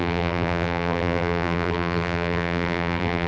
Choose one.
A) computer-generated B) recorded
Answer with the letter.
A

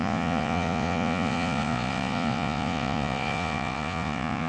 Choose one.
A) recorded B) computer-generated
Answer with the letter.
B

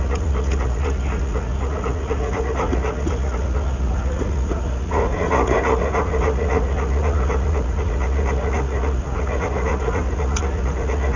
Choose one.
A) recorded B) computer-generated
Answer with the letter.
B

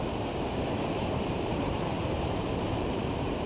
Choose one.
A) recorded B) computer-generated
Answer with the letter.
B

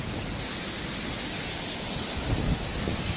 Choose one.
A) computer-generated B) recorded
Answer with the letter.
B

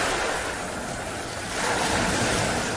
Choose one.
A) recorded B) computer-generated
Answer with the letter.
A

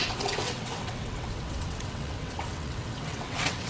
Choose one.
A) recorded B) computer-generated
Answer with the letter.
B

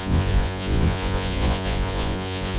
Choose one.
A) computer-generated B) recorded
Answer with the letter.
A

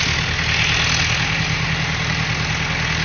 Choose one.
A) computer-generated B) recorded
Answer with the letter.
B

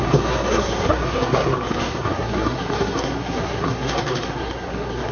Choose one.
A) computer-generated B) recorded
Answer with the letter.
A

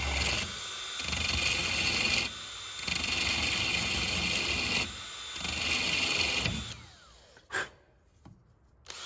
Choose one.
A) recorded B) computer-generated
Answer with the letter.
A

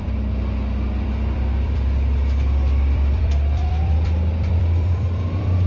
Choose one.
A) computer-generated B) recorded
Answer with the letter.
A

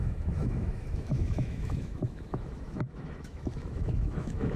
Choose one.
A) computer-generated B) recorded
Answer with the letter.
A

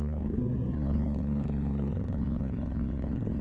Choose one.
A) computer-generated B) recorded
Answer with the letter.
A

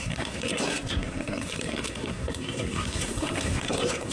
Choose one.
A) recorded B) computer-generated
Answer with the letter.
B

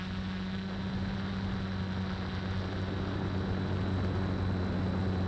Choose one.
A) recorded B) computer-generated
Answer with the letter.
A